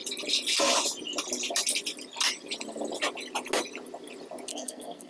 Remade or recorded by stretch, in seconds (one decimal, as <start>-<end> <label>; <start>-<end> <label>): 0.0-4.5 recorded; 4.5-5.1 remade